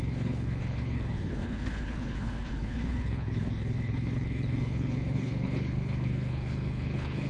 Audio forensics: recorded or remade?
remade